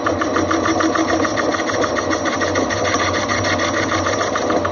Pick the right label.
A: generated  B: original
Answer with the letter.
B